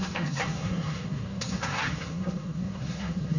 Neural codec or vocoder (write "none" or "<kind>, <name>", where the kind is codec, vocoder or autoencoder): codec, SNAC